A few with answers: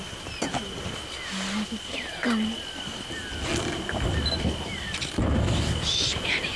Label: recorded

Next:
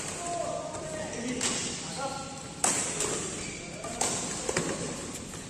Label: recorded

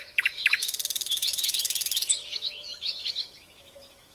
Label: remade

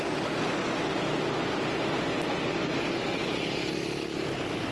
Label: recorded